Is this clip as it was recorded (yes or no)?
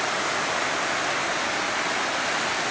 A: yes